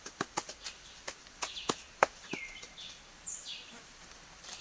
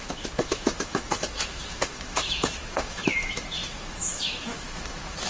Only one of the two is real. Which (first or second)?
first